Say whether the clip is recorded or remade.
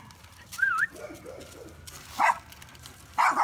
recorded